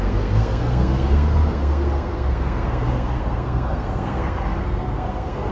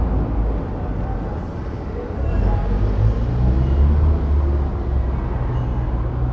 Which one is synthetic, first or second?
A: first